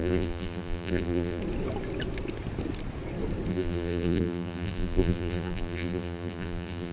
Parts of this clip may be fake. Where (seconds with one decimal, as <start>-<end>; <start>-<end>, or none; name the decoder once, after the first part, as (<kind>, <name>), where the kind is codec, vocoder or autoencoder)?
0.0-1.4 (vocoder, BigVGAN v2); 3.5-6.9